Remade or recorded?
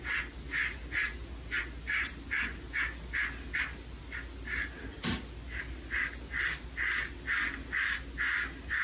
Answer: recorded